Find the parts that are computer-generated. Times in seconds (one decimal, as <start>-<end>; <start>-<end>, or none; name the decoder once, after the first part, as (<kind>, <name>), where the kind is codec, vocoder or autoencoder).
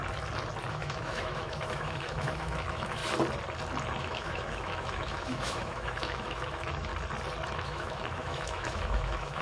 0.7-3.0 (autoencoder, DAC-VAE); 4.0-6.9; 7.5-9.4